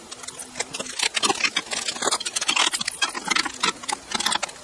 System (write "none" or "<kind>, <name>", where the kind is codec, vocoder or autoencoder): none